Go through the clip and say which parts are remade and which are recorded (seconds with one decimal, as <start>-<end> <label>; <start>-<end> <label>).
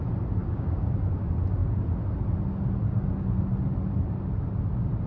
0.0-0.4 recorded; 0.4-0.9 remade; 0.9-5.1 recorded